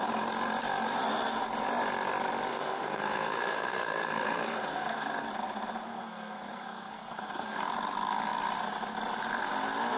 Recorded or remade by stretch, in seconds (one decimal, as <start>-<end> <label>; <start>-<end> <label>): 0.0-2.5 recorded; 2.5-5.3 remade; 5.3-5.9 recorded; 5.9-7.6 remade; 7.6-10.0 recorded